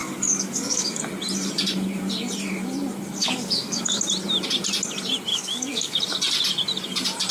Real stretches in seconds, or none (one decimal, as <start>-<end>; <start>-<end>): 1.0-3.2; 4.0-5.3; 6.0-7.3